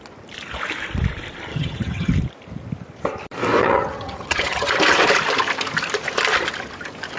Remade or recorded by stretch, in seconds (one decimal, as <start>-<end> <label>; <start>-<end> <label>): 0.0-1.5 recorded; 1.5-2.1 remade; 2.1-3.6 recorded; 3.6-4.7 remade; 4.7-7.2 recorded